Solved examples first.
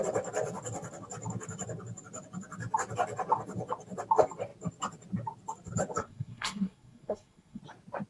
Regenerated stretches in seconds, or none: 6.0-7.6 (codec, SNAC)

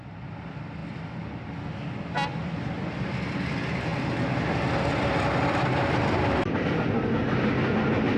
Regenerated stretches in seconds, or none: none

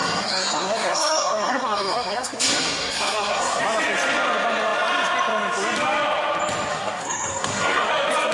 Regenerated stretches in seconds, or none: 0.0-3.6 (codec, SNAC); 6.7-7.9

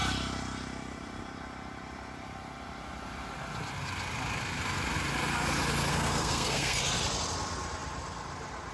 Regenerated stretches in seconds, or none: 5.9-6.8 (codec, SNAC)

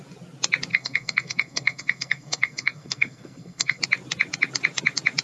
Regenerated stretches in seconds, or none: 0.7-3.8 (codec, SNAC)